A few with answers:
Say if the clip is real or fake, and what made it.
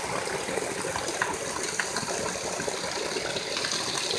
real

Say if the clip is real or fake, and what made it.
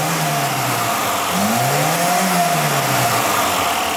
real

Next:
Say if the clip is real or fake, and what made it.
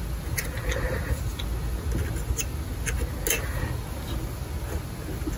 real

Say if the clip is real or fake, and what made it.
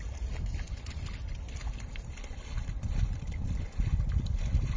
real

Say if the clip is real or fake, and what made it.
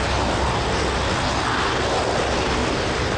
real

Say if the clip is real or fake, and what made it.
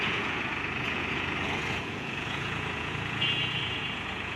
fake, vocoder, Vocos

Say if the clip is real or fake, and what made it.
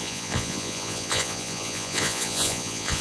fake, vocoder, Vocos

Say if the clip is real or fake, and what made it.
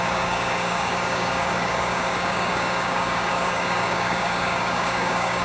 fake, codec, DAC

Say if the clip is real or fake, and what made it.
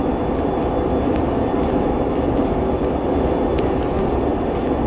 real